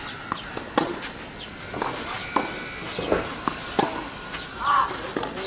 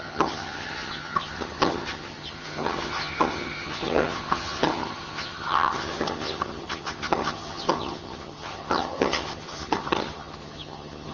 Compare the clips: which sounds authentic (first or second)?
first